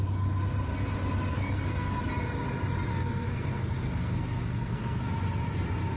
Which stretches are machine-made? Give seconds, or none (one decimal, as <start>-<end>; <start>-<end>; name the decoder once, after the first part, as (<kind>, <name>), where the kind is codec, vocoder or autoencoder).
1.3-2.0 (codec, SNAC); 2.9-5.0